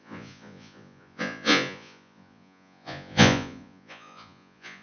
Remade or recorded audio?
remade